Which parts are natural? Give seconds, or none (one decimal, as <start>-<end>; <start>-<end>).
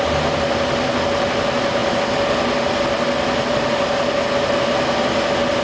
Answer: 0.0-5.6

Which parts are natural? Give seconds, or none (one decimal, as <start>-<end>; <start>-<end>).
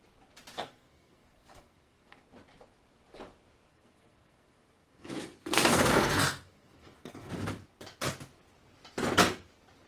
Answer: 0.0-0.5; 2.3-3.7; 7.3-9.9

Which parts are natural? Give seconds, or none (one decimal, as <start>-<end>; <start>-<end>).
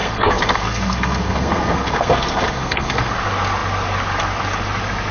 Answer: 3.1-5.1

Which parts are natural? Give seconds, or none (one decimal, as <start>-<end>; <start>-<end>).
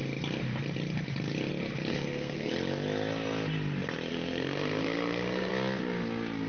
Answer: 0.0-1.9; 2.5-4.1; 5.5-6.5